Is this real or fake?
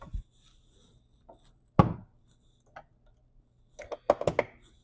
real